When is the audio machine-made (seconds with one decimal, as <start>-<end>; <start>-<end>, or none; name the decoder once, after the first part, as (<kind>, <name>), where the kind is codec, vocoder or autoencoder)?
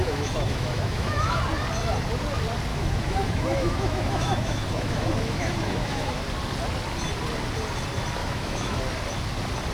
0.0-1.4 (autoencoder, DAC-VAE); 2.7-6.2; 8.2-8.8